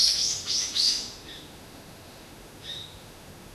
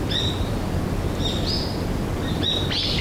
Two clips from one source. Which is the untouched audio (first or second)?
second